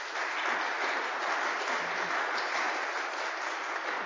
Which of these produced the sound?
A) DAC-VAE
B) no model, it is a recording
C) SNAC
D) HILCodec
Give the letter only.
B